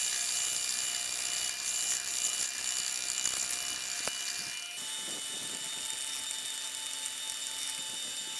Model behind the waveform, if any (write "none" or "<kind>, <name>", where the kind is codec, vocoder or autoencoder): none